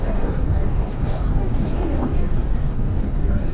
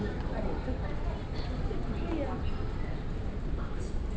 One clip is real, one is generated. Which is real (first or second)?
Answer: second